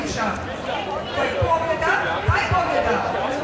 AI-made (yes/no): yes